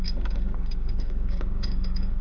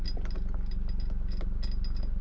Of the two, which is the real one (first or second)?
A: second